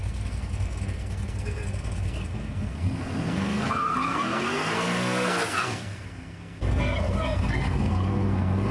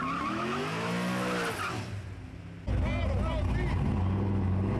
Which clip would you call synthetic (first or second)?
first